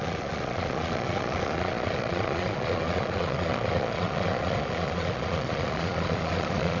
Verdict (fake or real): fake